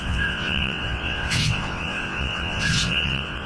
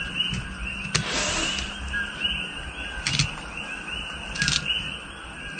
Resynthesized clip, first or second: first